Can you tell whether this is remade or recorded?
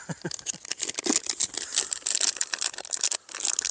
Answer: recorded